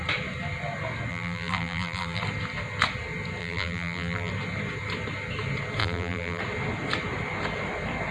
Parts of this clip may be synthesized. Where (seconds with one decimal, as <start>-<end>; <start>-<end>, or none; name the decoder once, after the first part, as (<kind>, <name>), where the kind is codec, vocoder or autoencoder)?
1.1-2.2 (vocoder, BigVGAN v2); 3.4-4.3; 5.8-6.4